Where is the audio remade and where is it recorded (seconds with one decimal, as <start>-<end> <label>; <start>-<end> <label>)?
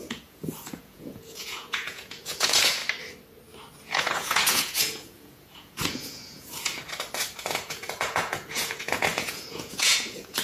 0.0-2.8 remade; 2.8-3.7 recorded; 3.7-6.7 remade; 6.7-7.4 recorded; 7.4-10.4 remade